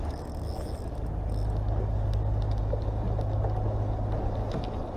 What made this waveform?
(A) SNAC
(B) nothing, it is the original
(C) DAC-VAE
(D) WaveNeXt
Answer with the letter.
B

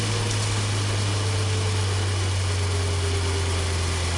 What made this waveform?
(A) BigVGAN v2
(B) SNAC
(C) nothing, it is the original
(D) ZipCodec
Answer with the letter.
C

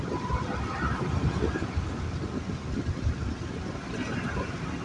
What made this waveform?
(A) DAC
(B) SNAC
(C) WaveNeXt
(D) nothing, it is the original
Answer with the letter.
D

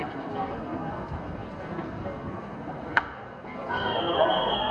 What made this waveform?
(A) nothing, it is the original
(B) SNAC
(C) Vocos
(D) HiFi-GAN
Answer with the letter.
B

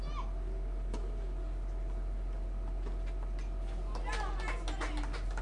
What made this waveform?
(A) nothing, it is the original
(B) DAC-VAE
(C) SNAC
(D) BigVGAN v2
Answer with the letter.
A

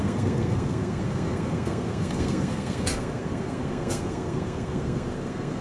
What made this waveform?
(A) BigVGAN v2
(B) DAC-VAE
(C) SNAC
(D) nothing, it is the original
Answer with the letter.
C